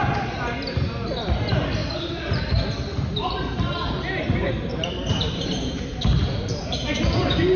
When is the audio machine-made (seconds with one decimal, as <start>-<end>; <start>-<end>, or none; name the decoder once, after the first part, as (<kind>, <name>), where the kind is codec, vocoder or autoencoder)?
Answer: 1.8-2.5 (vocoder, BigVGAN v2); 2.9-7.6